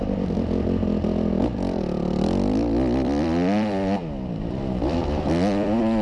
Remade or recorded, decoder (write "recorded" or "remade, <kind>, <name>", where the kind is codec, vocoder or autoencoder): remade, vocoder, BigVGAN v2